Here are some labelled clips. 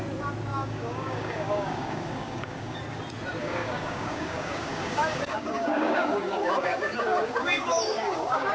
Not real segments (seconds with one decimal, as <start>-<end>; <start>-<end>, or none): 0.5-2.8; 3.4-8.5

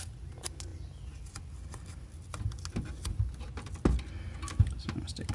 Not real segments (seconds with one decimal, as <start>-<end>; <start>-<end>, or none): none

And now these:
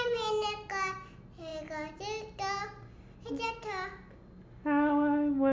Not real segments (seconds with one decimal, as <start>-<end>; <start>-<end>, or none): none